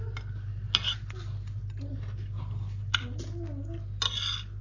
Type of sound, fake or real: real